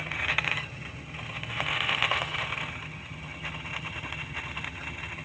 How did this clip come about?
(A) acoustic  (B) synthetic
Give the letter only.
B